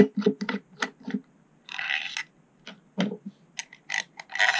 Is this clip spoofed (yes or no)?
no